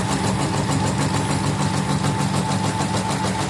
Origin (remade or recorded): recorded